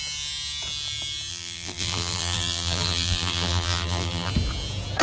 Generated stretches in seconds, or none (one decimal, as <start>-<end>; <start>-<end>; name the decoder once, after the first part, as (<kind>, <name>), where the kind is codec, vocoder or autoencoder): 1.3-4.3 (vocoder, BigVGAN v2)